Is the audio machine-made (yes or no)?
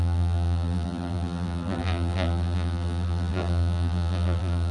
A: yes